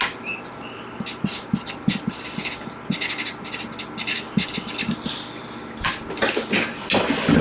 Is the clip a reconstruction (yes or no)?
no